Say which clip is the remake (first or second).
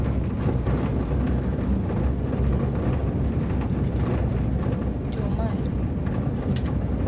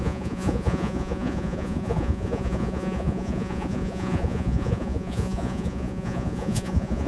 second